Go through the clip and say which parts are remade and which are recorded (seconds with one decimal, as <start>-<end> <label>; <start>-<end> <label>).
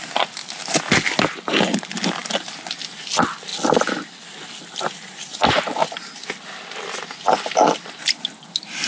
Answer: 0.0-8.9 recorded